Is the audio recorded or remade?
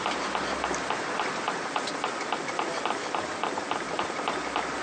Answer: recorded